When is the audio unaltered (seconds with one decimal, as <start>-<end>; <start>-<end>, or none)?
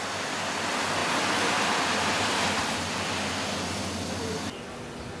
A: 0.0-5.2